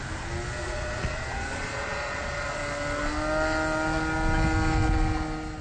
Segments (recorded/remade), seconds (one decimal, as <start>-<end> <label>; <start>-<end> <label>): 0.0-0.6 recorded; 0.6-2.6 remade; 2.6-5.6 recorded